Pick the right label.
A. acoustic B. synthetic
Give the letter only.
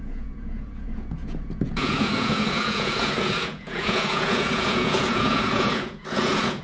B